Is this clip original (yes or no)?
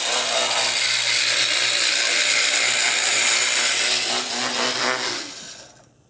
yes